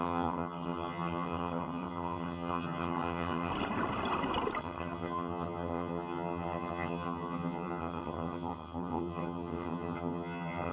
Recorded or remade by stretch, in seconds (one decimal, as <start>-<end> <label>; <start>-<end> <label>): 0.0-3.5 remade; 3.5-4.6 recorded; 4.6-10.7 remade